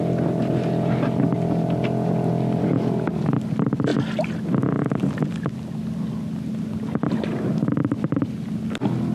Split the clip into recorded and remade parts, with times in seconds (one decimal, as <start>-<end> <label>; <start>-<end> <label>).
0.0-9.1 recorded